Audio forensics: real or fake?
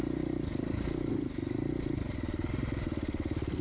real